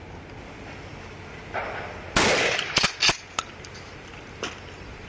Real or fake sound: real